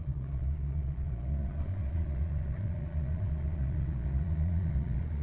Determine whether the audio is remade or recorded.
remade